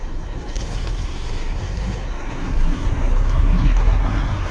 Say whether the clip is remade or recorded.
remade